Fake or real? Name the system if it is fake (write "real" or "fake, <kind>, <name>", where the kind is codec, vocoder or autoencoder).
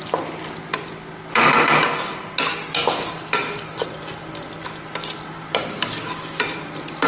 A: real